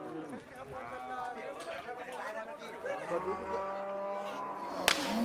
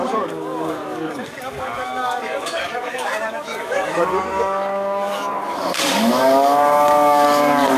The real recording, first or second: first